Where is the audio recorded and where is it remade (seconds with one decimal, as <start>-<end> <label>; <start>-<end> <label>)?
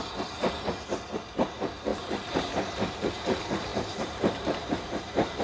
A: 0.0-1.9 recorded; 1.9-2.4 remade; 2.4-3.7 recorded; 3.7-5.4 remade